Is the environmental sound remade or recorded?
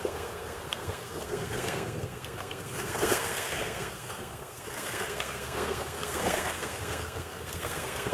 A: remade